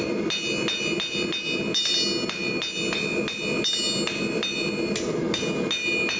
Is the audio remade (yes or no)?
no